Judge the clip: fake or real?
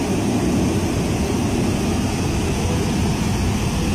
real